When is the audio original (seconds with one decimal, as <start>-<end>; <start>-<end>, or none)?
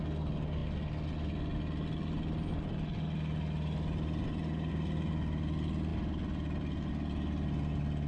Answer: 0.0-8.1